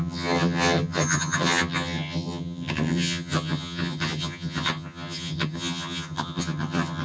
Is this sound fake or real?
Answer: fake